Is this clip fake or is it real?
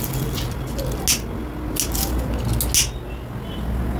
real